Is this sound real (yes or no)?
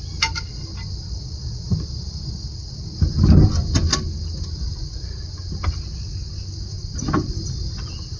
yes